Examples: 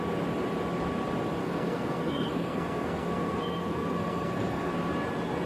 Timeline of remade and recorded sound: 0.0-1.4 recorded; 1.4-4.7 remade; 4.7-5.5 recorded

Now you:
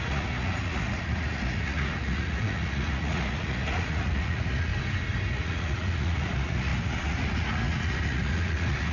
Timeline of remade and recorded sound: 0.0-4.7 remade; 4.7-5.3 recorded; 5.3-8.9 remade

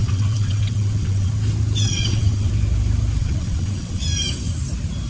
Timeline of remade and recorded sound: 0.0-1.3 remade; 1.3-1.8 recorded; 1.8-2.5 remade; 2.5-3.2 recorded; 3.2-4.0 remade; 4.0-5.1 recorded

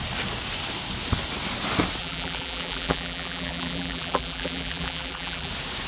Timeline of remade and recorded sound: 0.0-2.0 recorded; 2.0-5.5 remade; 5.5-5.9 recorded

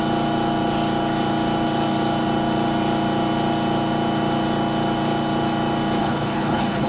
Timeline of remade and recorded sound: 0.0-6.0 recorded; 6.0-6.9 remade

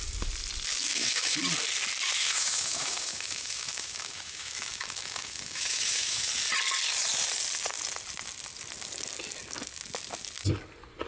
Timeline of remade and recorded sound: 0.0-0.8 recorded; 0.8-1.4 remade; 1.4-2.2 recorded; 2.2-6.3 remade; 6.3-11.1 recorded

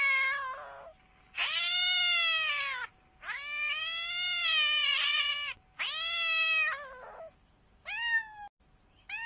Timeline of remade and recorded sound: 0.0-4.8 recorded; 4.8-5.3 remade; 5.3-9.3 recorded

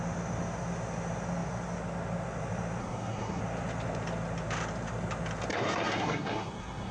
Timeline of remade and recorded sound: 0.0-2.8 recorded; 2.8-3.4 remade; 3.4-5.5 recorded; 5.5-6.9 remade